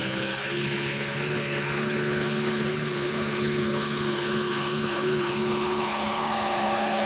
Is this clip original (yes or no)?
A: no